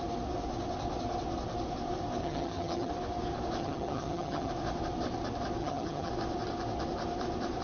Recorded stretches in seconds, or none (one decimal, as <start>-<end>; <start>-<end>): 0.0-2.2; 2.9-3.6; 4.5-5.6; 6.1-7.6